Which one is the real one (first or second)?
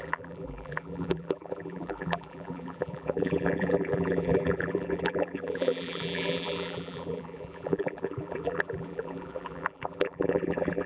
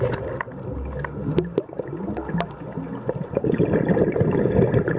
second